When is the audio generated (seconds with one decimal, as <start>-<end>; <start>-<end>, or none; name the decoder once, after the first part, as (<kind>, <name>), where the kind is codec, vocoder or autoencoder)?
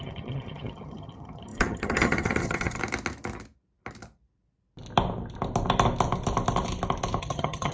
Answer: 0.0-2.8 (vocoder, HiFi-GAN); 7.2-7.7